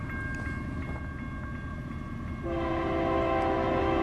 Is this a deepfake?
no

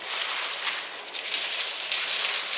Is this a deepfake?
no